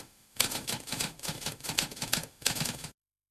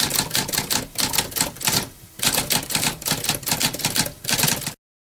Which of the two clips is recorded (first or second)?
second